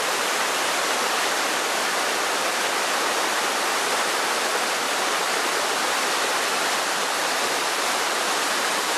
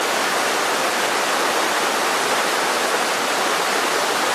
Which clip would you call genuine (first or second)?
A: second